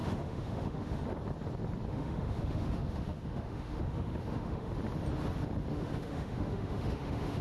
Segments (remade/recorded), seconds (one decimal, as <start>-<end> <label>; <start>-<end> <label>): 0.0-1.0 remade; 1.0-1.9 recorded; 1.9-4.7 remade; 4.7-5.7 recorded; 5.7-7.4 remade